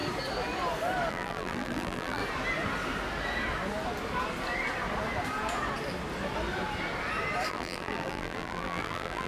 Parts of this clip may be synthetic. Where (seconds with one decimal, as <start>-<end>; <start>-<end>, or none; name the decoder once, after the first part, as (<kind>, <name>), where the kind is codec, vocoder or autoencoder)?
1.1-2.2 (vocoder, BigVGAN v2); 7.5-9.3